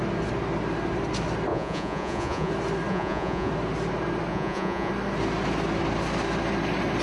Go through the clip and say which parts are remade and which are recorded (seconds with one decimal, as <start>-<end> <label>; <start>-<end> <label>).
0.0-1.5 recorded; 1.5-2.5 remade; 2.5-2.9 recorded; 2.9-3.5 remade; 3.5-4.3 recorded; 4.3-4.9 remade; 4.9-7.0 recorded